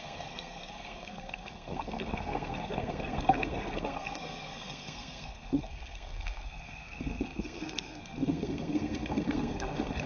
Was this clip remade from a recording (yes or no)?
yes